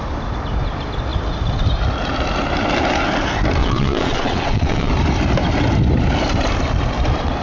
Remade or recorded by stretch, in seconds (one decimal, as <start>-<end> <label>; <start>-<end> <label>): 0.0-3.6 recorded; 3.6-4.9 remade; 4.9-7.4 recorded